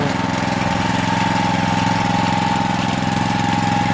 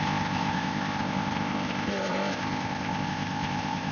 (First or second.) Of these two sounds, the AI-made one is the second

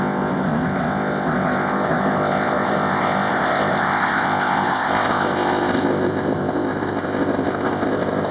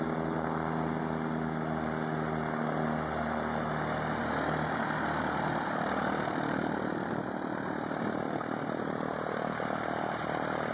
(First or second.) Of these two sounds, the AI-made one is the first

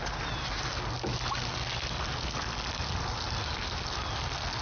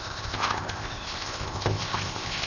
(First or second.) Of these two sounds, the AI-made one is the second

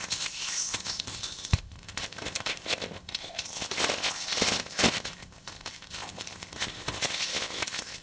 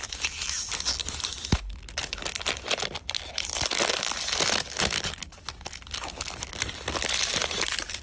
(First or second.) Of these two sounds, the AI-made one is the first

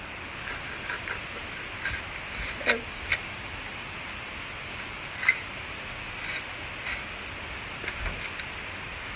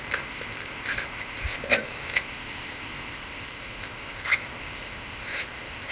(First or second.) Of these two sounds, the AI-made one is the second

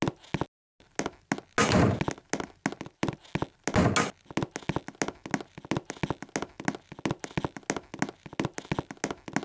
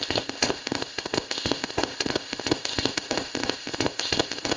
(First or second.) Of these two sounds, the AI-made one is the second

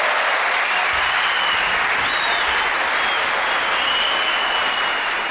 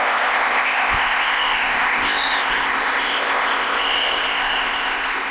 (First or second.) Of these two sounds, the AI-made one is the second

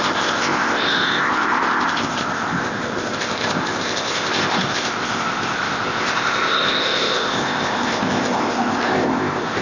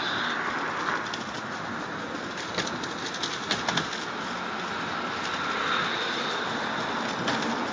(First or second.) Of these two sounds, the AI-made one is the first